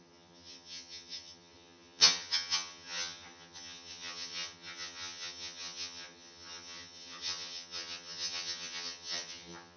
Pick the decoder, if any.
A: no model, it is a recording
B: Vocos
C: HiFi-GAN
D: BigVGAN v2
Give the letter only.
C